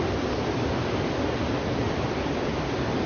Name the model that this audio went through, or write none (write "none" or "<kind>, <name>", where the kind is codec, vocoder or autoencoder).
none